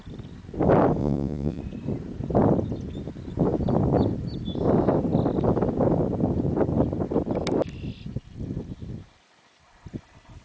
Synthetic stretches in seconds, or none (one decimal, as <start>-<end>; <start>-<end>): 1.0-1.6